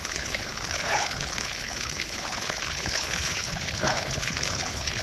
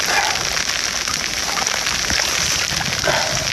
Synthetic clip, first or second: first